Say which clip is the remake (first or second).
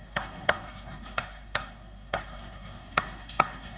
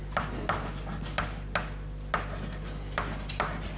first